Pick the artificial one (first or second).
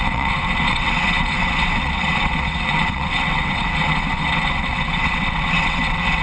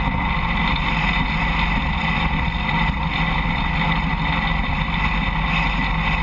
first